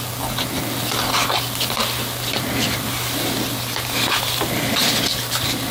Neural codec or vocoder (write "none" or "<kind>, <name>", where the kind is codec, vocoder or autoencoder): none